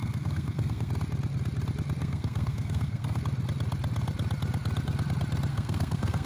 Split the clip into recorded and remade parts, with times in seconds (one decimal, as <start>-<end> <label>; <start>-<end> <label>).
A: 0.0-0.9 remade; 0.9-2.0 recorded; 2.0-3.2 remade; 3.2-5.5 recorded; 5.5-6.3 remade